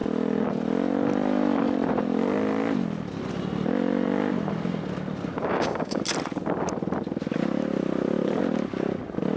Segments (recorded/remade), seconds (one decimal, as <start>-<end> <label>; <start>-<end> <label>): 0.0-5.5 recorded; 5.5-6.0 remade; 6.0-9.4 recorded